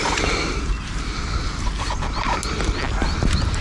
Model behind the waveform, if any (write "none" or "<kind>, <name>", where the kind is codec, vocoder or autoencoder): none